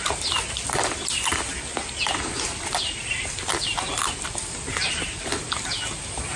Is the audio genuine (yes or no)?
yes